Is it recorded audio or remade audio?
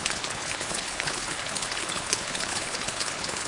remade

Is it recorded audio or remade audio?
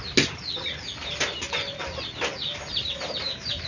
recorded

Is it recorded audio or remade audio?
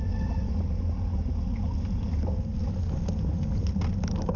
recorded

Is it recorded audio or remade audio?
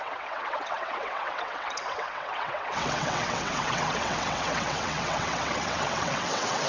remade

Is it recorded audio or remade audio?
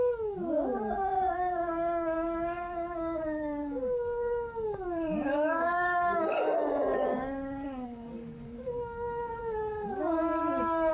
remade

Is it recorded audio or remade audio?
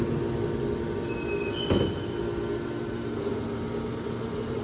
recorded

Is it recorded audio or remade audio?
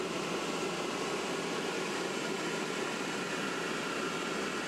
recorded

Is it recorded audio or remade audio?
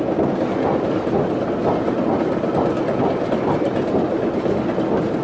recorded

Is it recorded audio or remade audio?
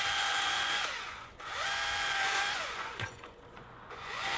remade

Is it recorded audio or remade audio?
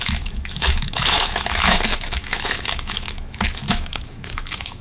remade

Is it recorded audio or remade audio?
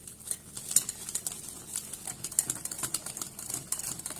recorded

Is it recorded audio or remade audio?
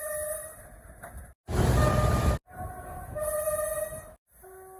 recorded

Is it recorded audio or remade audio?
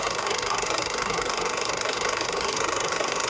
remade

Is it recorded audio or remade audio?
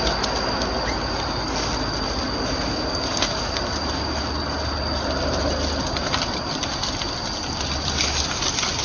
recorded